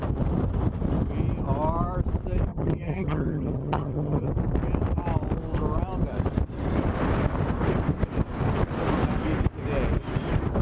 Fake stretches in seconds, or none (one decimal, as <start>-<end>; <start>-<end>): 2.5-4.3